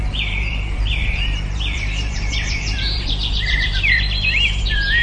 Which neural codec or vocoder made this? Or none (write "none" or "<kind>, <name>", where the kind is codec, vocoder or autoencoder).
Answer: vocoder, BigVGAN v2